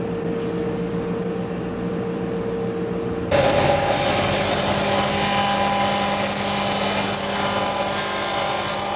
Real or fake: real